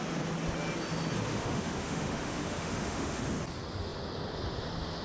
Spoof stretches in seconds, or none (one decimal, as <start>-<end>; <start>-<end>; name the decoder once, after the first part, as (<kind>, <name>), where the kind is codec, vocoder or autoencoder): 1.3-3.2 (autoencoder, DAC-VAE)